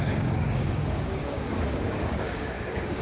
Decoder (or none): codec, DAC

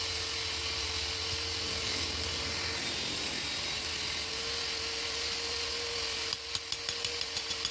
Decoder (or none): none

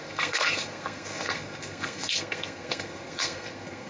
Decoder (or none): codec, SNAC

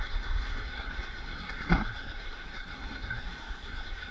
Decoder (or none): codec, SNAC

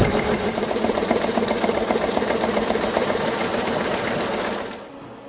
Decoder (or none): vocoder, BigVGAN v2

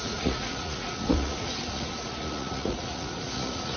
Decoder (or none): vocoder, Vocos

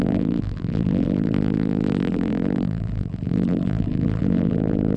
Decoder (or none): vocoder, BigVGAN v2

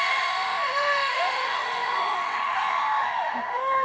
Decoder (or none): autoencoder, DAC-VAE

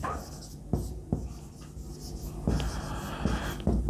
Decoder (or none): none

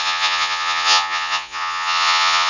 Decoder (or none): vocoder, Vocos